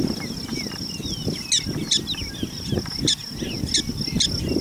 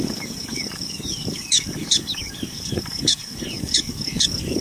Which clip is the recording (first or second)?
first